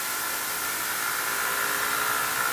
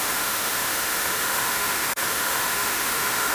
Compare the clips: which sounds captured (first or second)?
first